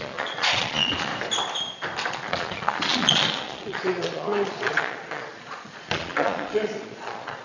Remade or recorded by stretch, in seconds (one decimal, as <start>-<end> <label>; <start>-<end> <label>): 0.0-1.1 remade; 1.1-2.1 recorded; 2.1-7.4 remade